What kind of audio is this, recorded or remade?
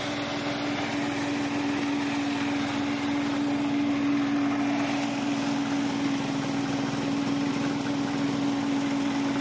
recorded